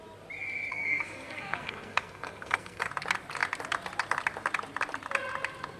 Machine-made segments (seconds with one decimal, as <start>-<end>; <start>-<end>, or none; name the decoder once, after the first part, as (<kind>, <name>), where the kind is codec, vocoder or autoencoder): 0.7-2.9 (codec, SNAC)